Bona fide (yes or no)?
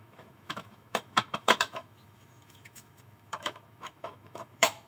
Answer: no